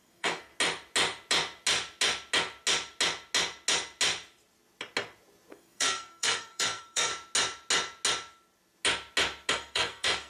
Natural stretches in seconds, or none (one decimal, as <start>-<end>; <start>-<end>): 0.5-5.5; 7.1-9.5